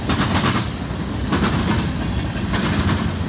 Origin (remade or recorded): recorded